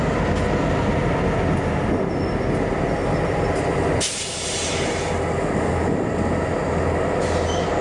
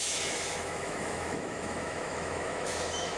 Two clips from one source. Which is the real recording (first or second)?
first